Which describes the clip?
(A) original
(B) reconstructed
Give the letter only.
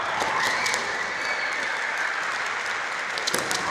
A